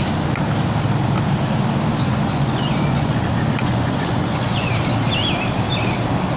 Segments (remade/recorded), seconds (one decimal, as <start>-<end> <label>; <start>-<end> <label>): 0.0-2.0 recorded; 2.0-3.2 remade; 3.2-3.6 recorded; 3.6-4.7 remade; 4.7-6.4 recorded